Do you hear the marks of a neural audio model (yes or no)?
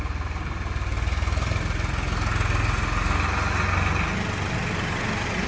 no